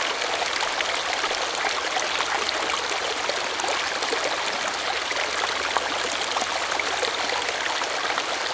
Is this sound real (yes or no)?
yes